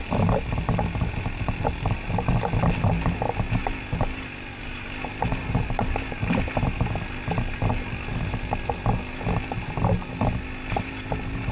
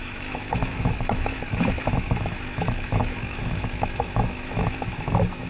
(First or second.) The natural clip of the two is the first